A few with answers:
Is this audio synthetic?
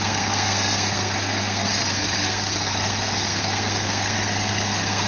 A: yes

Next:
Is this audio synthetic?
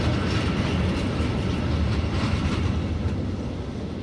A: no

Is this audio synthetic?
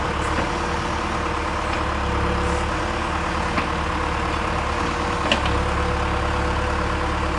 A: no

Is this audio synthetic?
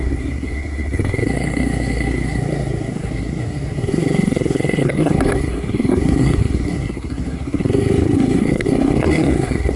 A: yes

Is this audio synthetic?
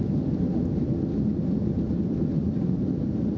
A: no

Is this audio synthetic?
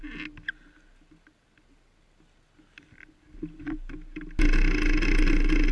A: no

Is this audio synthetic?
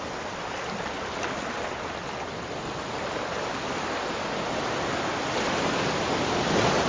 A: no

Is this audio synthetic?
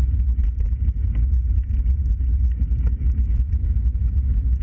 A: no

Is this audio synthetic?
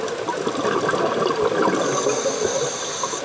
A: no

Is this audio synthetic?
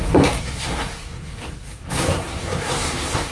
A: yes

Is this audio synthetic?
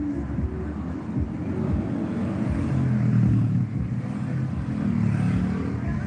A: no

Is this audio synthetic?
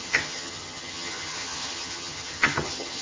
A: yes